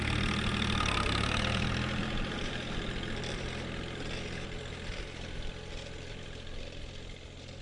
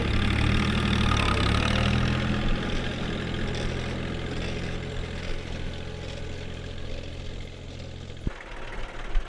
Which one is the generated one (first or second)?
first